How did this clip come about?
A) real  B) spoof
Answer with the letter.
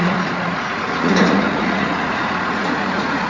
B